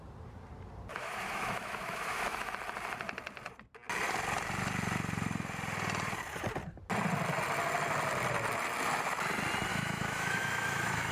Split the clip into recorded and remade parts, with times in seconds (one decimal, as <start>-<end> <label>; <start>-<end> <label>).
0.0-0.9 recorded; 0.9-2.5 remade; 2.5-9.7 recorded; 9.7-11.1 remade